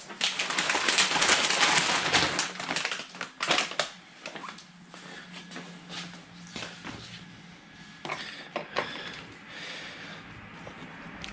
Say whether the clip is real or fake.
real